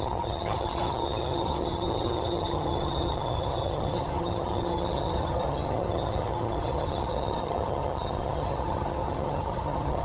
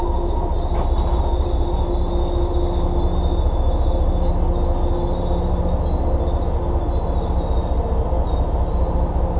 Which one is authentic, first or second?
second